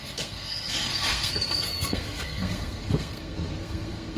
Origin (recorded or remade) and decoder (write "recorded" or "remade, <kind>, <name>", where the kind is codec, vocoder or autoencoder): remade, codec, SNAC